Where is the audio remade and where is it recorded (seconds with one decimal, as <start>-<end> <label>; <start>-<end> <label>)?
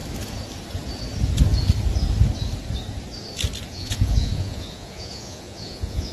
0.0-3.7 recorded; 3.7-6.1 remade